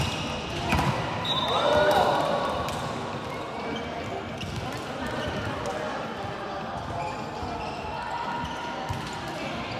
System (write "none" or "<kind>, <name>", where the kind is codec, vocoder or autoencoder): none